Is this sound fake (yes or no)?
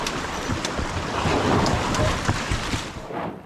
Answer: yes